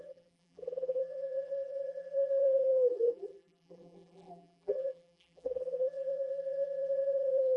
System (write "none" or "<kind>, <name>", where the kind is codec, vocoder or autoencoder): vocoder, BigVGAN v2